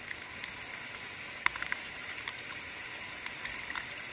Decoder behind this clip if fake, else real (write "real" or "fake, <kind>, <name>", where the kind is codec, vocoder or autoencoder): real